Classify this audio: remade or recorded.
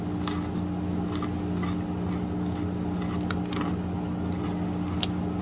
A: recorded